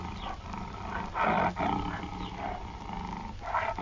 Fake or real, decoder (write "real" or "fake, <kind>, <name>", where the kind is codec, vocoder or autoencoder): real